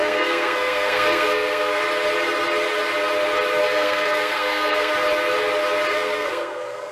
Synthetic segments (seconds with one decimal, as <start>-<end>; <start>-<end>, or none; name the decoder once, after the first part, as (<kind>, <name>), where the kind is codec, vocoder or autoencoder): 0.0-1.8 (codec, SNAC); 3.6-4.9; 5.9-6.9